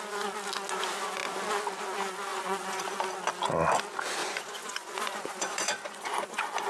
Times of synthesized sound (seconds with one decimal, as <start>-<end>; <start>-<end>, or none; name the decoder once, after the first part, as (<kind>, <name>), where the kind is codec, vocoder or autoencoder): 2.3-2.8 (vocoder, Vocos); 4.2-6.7

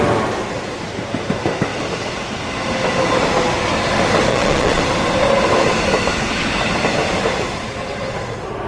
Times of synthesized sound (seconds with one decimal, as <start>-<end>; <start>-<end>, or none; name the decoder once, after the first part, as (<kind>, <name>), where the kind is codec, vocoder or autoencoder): 4.3-4.8 (vocoder, Vocos)